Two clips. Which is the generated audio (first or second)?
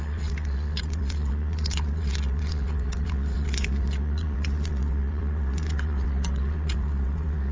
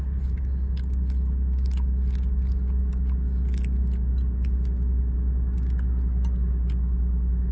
first